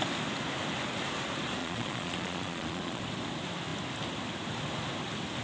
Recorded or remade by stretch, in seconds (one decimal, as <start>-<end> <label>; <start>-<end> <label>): 0.0-1.6 recorded; 1.6-3.0 remade; 3.0-5.4 recorded